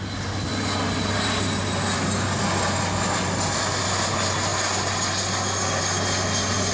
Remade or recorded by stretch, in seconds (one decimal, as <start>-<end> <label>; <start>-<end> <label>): 0.0-6.7 recorded